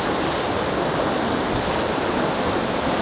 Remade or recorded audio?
recorded